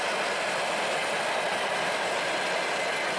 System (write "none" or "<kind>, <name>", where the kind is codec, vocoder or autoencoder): none